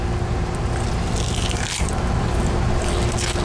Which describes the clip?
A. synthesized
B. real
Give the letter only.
B